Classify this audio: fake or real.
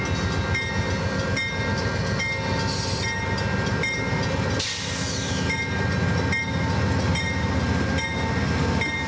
real